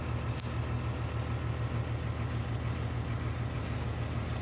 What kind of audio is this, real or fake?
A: real